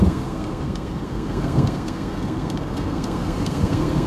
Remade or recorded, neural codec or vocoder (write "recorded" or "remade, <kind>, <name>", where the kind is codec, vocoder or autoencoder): remade, codec, SNAC